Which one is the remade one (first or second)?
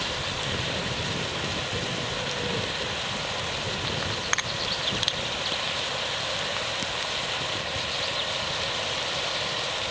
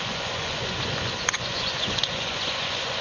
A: second